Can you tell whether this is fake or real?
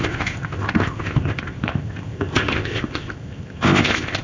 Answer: fake